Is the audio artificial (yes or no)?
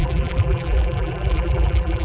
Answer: yes